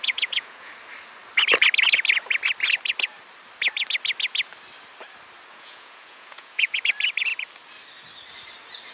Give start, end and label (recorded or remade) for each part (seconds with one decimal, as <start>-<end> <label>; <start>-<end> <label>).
0.0-0.7 remade; 0.7-5.5 recorded; 5.5-6.8 remade; 6.8-8.9 recorded